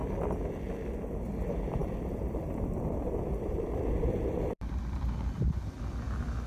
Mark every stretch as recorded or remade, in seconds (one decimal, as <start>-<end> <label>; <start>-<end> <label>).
0.0-1.8 recorded; 1.8-5.7 remade; 5.7-6.5 recorded